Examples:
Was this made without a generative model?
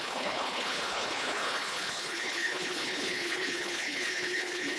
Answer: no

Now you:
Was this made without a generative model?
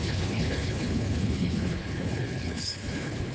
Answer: no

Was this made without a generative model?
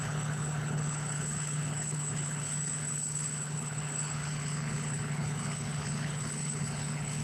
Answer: no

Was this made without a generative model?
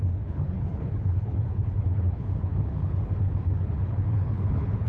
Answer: no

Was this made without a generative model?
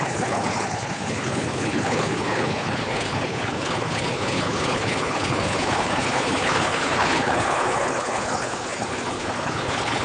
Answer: no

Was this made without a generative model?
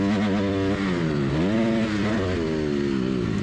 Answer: yes